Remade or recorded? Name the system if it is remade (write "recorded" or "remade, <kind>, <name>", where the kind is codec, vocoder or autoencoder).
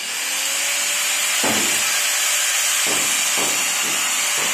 recorded